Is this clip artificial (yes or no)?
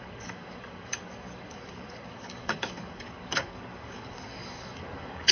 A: yes